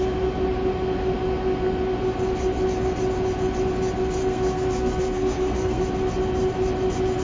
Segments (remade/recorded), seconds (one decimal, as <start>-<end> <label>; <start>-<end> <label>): 0.0-4.2 recorded; 4.2-5.8 remade; 5.8-7.2 recorded